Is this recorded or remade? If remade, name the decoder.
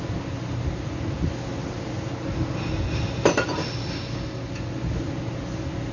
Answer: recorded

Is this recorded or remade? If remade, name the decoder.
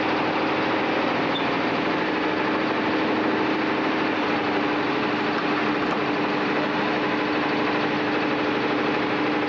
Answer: recorded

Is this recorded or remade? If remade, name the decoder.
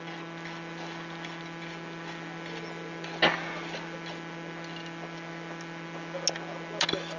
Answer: recorded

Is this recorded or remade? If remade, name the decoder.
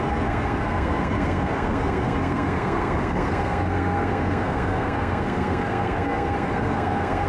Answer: remade, codec, SNAC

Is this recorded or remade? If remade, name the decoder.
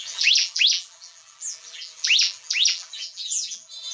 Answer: remade, vocoder, BigVGAN v2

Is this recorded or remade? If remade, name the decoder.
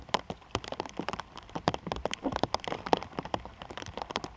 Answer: recorded